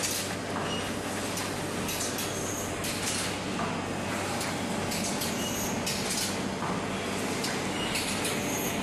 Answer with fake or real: real